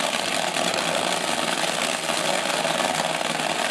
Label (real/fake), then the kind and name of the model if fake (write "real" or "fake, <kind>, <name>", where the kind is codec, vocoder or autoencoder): real